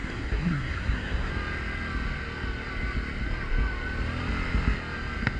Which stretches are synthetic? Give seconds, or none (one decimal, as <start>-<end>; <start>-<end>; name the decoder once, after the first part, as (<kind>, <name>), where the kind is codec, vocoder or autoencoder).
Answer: 0.0-1.3 (codec, SNAC)